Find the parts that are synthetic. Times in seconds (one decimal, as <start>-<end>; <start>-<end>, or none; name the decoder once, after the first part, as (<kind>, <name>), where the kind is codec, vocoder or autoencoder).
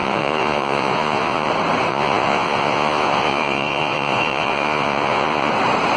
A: 0.0-1.5 (vocoder, Vocos); 1.9-5.5